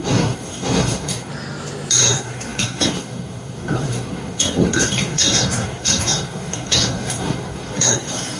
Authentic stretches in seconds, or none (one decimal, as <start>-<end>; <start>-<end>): 1.3-2.0